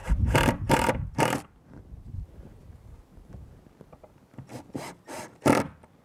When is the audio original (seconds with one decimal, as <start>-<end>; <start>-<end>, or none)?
3.6-6.0